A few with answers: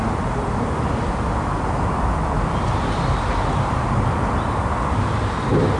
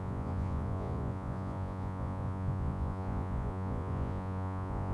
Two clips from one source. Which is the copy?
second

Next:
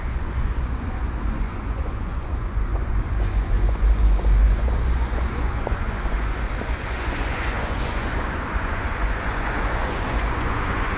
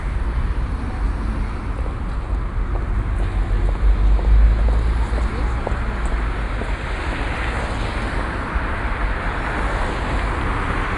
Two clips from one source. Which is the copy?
first